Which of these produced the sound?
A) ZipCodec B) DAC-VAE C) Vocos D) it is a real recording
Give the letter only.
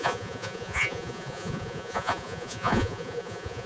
C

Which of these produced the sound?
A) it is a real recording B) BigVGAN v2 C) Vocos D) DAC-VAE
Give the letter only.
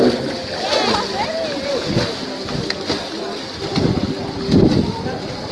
A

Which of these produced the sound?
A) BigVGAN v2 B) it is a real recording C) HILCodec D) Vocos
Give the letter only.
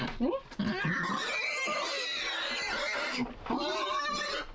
B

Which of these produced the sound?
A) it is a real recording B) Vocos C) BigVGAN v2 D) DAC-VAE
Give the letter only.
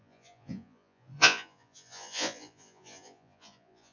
B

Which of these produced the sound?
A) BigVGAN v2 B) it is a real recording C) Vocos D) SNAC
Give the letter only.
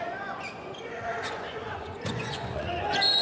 C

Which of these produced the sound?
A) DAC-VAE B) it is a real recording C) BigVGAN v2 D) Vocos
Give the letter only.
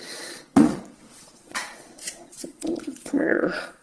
D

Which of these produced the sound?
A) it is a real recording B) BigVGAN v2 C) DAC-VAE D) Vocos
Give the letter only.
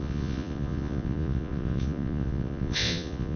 D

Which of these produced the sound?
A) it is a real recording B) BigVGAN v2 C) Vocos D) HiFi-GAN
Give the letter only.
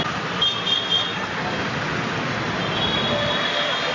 A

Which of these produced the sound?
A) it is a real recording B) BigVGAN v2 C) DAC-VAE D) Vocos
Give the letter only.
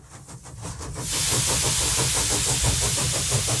A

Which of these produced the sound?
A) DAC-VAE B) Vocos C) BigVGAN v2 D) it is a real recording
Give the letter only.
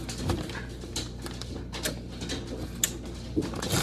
D